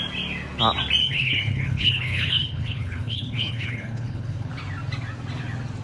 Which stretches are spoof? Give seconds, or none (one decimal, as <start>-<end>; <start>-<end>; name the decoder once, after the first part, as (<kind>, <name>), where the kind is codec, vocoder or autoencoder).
1.0-4.5 (codec, HILCodec)